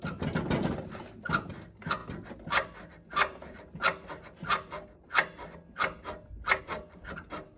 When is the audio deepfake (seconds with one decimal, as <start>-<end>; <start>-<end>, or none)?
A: none